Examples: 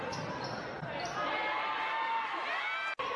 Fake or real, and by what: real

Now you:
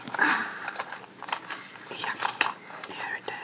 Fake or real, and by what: fake, vocoder, BigVGAN v2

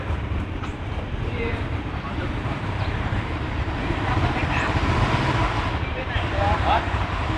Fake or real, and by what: fake, vocoder, BigVGAN v2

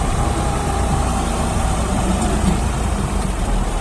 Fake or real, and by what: fake, vocoder, BigVGAN v2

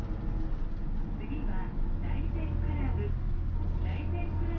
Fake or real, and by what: real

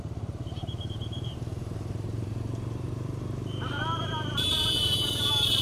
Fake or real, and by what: fake, vocoder, BigVGAN v2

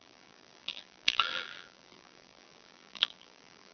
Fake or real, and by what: fake, vocoder, BigVGAN v2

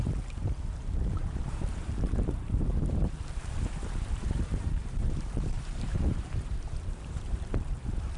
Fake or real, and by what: fake, vocoder, BigVGAN v2